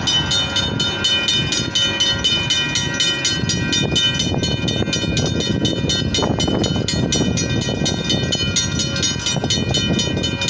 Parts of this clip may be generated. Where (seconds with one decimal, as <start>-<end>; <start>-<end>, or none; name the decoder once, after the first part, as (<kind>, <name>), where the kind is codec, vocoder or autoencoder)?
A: none